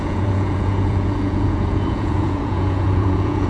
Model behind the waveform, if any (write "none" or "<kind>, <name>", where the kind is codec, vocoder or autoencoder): vocoder, Vocos